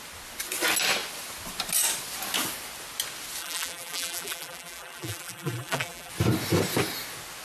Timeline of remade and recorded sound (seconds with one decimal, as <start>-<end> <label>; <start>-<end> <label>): 0.0-3.4 recorded; 3.4-6.1 remade; 6.1-7.4 recorded